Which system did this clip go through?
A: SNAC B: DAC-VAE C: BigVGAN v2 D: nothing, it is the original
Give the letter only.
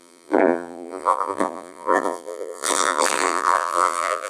C